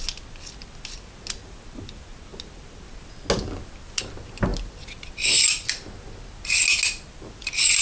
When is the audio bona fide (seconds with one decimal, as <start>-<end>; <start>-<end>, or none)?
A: 0.0-7.8